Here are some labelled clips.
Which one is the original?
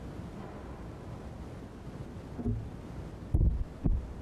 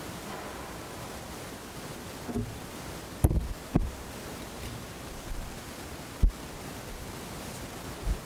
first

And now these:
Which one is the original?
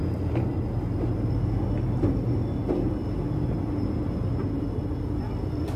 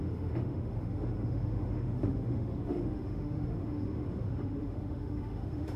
first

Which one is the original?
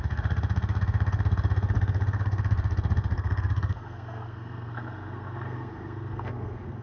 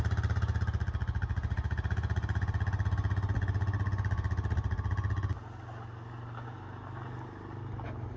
second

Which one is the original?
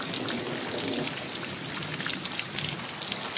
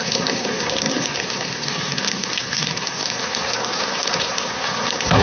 first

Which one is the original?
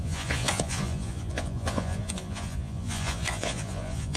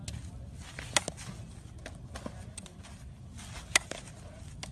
second